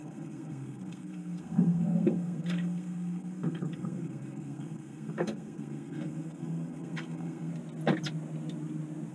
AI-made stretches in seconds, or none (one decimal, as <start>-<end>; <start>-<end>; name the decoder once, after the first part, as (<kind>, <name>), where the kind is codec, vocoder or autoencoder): 0.0-7.5 (codec, SNAC)